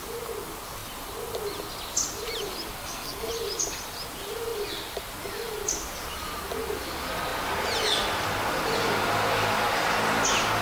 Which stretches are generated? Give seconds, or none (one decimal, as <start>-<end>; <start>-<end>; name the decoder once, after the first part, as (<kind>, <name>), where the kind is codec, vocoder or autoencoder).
2.8-3.3 (codec, SNAC)